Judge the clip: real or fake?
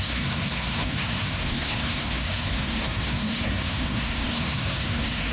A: fake